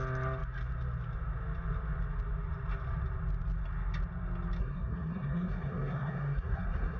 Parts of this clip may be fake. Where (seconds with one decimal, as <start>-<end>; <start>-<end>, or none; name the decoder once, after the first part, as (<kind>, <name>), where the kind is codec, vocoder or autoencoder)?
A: 4.6-7.0 (codec, SNAC)